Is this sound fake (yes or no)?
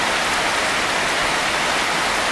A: no